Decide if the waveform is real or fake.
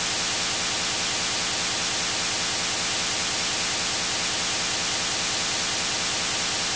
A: real